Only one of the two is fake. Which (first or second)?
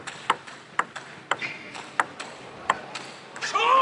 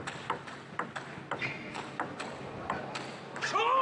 first